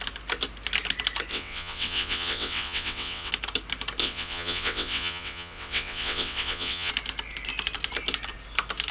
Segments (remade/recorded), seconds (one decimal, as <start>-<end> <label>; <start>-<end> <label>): 0.0-1.3 recorded; 1.3-3.3 remade; 3.3-4.0 recorded; 4.0-6.9 remade; 6.9-8.9 recorded